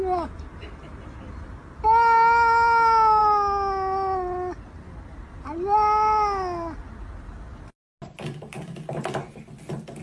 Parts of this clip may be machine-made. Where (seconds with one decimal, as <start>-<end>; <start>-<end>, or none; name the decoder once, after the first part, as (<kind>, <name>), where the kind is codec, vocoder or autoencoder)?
none

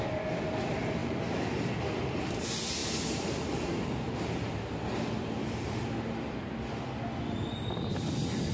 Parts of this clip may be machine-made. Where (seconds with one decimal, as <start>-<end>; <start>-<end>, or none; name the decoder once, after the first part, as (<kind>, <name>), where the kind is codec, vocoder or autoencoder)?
1.0-1.7 (vocoder, BigVGAN v2); 2.8-6.4

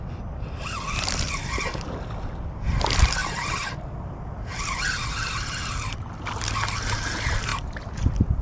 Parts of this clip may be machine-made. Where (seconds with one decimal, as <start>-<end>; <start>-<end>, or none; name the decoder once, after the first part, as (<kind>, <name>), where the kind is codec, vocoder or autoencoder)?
3.2-6.1 (vocoder, BigVGAN v2); 7.5-8.4

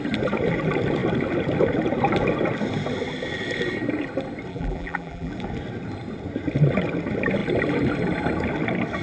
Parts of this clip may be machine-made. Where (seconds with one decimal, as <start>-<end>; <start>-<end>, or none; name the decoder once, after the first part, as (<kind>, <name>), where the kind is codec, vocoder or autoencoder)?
4.5-5.3 (vocoder, BigVGAN v2)

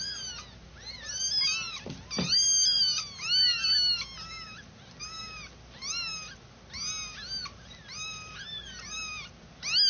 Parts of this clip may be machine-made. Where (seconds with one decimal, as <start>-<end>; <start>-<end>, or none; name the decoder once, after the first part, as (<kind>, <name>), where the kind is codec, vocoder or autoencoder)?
none

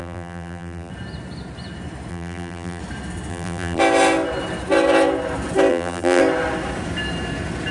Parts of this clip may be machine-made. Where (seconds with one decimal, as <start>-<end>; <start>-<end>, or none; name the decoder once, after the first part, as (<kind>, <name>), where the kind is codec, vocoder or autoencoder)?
0.0-0.9 (vocoder, BigVGAN v2); 2.1-2.8; 3.3-3.8; 5.7-6.2

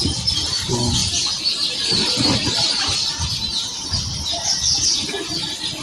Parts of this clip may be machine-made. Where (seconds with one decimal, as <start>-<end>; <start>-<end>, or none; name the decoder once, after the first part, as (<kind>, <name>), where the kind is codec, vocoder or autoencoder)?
3.5-4.4 (vocoder, BigVGAN v2)

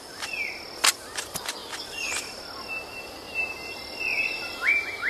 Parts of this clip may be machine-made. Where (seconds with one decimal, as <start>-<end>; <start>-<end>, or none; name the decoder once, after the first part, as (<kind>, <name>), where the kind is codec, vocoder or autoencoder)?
4.1-5.1 (vocoder, BigVGAN v2)